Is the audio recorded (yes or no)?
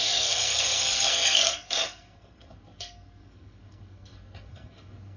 no